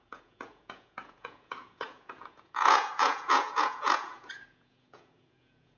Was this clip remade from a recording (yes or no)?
yes